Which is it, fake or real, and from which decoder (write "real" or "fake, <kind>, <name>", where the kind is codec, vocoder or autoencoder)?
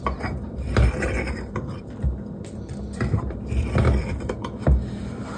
fake, vocoder, BigVGAN v2